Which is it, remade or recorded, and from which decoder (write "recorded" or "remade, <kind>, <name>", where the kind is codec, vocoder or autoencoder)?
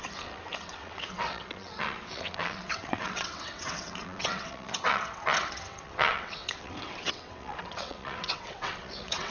remade, vocoder, WaveNeXt